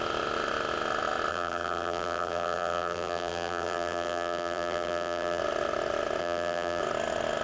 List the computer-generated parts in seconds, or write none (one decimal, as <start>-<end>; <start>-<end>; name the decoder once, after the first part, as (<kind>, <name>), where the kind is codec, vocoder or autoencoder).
1.3-5.4 (vocoder, BigVGAN v2); 6.2-6.8

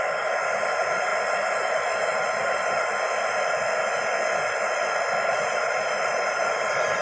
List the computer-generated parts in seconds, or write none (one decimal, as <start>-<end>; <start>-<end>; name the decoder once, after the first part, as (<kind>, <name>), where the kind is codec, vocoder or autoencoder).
0.0-2.9 (vocoder, BigVGAN v2); 5.3-7.0

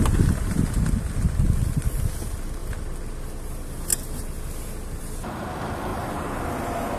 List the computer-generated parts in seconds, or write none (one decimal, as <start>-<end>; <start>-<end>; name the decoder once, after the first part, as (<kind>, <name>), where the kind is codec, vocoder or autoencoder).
5.9-6.4 (vocoder, BigVGAN v2)

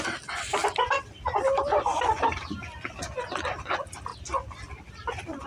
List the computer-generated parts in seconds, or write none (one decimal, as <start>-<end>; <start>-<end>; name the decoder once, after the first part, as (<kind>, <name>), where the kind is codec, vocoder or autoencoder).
0.6-2.6 (vocoder, BigVGAN v2)

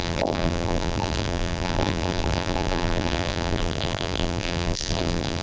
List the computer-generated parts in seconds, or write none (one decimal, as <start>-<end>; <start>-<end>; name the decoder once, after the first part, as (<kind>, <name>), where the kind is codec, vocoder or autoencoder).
0.0-5.4 (vocoder, BigVGAN v2)